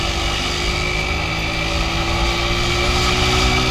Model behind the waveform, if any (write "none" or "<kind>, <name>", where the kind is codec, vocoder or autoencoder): none